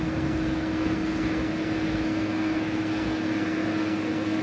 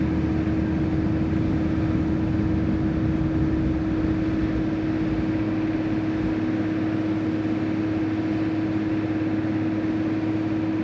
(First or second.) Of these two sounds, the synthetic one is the first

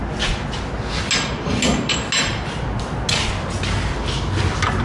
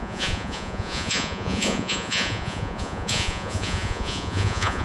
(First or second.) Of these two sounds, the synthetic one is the second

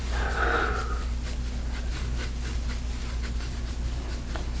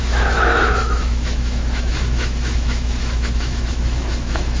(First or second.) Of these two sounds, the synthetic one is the second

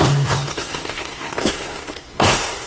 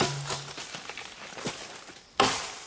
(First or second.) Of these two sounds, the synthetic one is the first